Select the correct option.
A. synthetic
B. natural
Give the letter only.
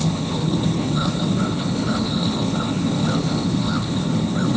A